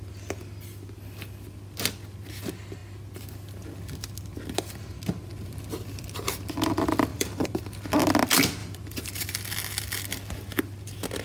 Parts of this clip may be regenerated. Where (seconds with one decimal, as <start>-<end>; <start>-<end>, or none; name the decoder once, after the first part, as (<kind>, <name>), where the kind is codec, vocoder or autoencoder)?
7.1-7.6 (vocoder, BigVGAN v2); 8.6-9.3